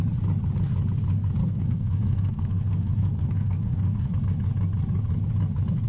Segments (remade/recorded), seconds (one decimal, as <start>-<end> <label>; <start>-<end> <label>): 0.0-1.4 recorded; 1.4-4.1 remade; 4.1-5.9 recorded